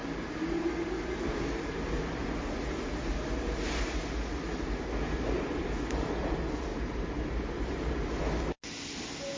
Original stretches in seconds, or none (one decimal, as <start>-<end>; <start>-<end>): 0.7-6.7; 7.7-9.4